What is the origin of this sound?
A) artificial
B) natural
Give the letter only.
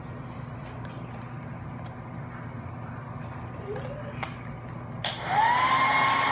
B